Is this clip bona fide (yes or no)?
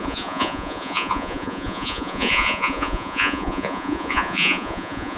no